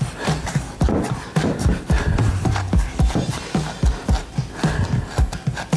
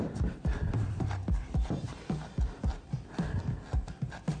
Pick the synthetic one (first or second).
second